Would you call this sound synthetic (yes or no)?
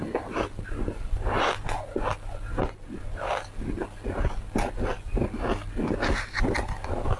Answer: no